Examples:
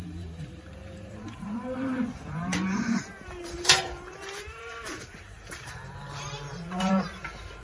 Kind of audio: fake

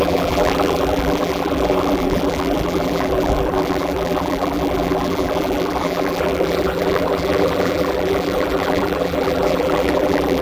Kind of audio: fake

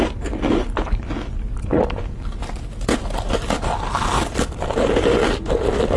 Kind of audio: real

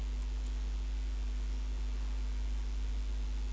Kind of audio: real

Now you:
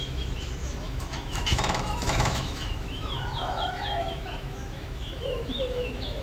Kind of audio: fake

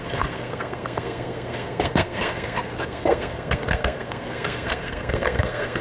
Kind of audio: fake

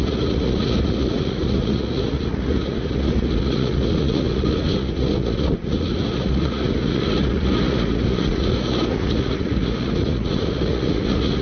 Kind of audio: fake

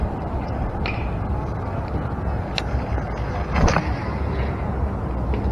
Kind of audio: real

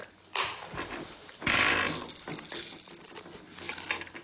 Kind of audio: real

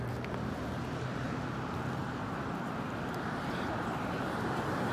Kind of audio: real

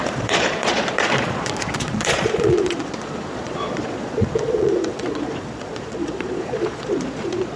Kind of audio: fake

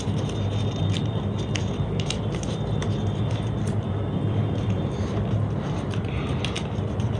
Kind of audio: real